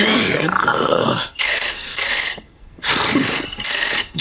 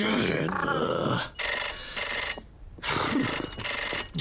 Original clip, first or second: second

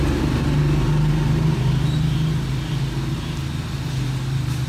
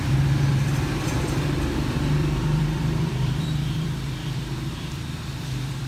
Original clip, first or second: first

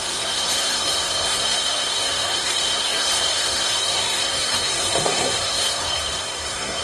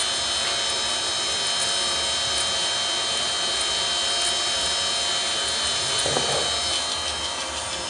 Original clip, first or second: second